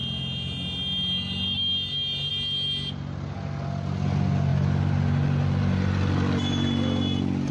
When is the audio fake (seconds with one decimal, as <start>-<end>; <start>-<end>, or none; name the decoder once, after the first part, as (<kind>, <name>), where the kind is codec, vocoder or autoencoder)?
none